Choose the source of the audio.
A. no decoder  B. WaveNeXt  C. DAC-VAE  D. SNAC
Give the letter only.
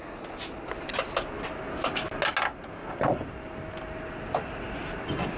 A